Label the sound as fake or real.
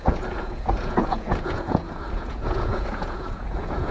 fake